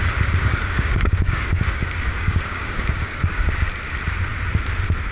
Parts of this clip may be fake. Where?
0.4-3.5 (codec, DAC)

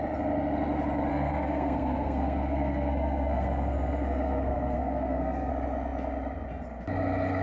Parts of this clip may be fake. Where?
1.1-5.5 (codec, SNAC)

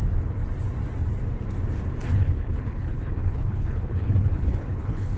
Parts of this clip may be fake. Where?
2.1-5.2 (codec, HILCodec)